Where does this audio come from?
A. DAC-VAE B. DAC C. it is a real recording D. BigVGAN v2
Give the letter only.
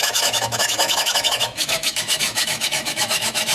A